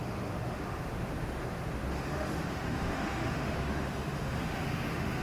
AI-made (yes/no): yes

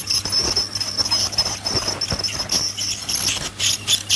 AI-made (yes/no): no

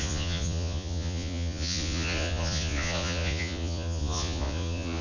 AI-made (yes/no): yes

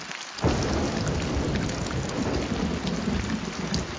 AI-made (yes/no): no